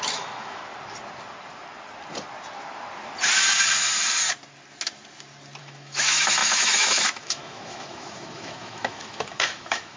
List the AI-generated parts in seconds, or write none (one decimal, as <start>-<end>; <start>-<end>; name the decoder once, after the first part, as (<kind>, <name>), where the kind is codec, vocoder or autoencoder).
0.0-0.6 (autoencoder, DAC-VAE); 5.6-10.0